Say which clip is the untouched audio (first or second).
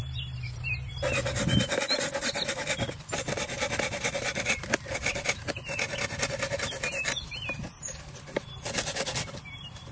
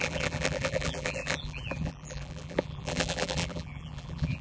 first